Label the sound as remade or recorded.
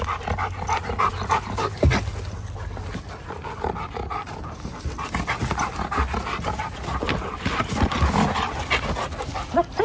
recorded